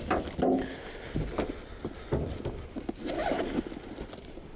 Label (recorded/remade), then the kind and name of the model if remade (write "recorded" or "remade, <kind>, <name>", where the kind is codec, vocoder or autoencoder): recorded